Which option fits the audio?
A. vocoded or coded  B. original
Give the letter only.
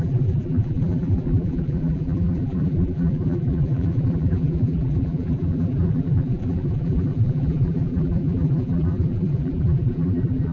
A